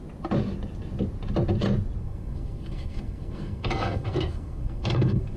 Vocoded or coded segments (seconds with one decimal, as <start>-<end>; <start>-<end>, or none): 2.0-5.4